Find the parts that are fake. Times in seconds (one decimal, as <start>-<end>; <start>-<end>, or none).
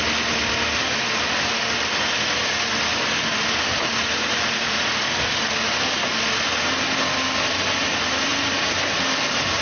none